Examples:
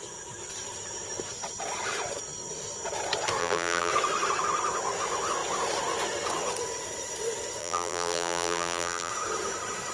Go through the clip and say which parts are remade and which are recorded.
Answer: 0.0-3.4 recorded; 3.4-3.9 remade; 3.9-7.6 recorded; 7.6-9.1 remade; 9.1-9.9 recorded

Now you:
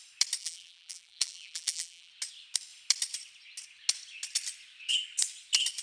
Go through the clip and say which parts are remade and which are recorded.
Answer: 0.0-0.4 recorded; 0.4-2.1 remade; 2.1-5.8 recorded

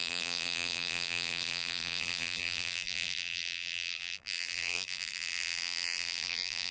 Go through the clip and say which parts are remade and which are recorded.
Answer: 0.0-6.7 remade

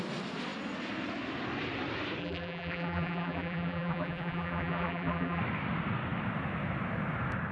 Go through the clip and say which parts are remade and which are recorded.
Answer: 0.0-2.2 recorded; 2.2-5.4 remade; 5.4-7.5 recorded

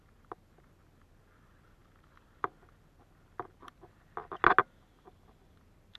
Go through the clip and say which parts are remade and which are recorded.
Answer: 0.0-4.2 remade; 4.2-4.9 recorded; 4.9-6.0 remade

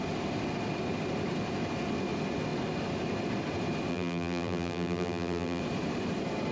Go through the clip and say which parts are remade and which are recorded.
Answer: 0.0-3.9 recorded; 3.9-5.6 remade; 5.6-6.5 recorded